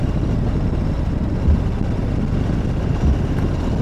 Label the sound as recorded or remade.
recorded